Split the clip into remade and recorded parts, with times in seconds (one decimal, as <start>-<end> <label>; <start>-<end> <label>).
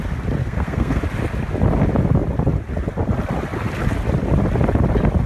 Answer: 0.0-0.4 recorded; 0.4-1.0 remade; 1.0-5.3 recorded